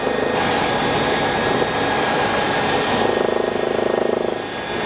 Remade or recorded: recorded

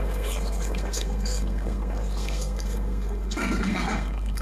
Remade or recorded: remade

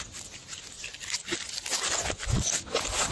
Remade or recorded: recorded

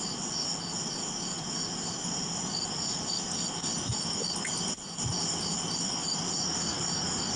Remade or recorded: recorded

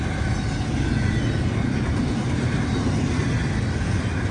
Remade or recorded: recorded